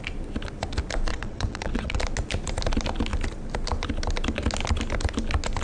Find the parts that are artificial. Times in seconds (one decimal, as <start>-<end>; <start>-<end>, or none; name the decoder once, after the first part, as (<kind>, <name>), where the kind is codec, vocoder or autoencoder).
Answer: 1.1-2.0 (vocoder, WaveNeXt)